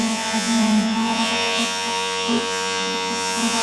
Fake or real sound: fake